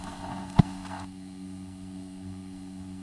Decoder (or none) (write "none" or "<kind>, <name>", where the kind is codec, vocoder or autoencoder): codec, SNAC